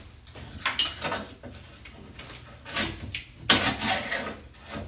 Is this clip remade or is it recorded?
recorded